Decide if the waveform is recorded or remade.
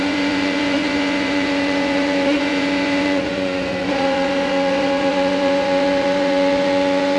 remade